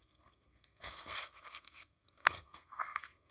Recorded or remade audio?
remade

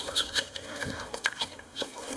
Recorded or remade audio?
remade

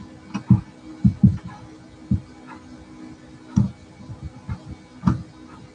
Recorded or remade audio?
recorded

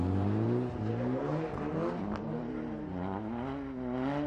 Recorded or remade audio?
recorded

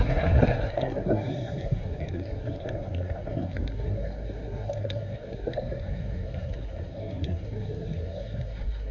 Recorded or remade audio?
remade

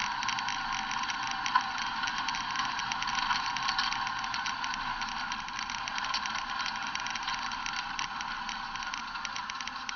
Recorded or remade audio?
recorded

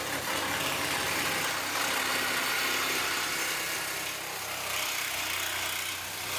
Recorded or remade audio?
recorded